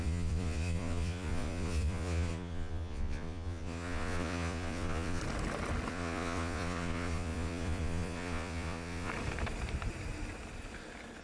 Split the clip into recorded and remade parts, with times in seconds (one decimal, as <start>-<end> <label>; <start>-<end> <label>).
0.0-5.2 remade; 5.2-5.9 recorded; 5.9-9.1 remade; 9.1-11.2 recorded